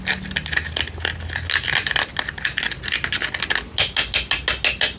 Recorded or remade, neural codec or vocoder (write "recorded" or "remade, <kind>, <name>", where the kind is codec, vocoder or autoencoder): recorded